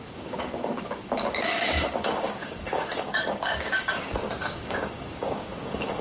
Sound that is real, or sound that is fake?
fake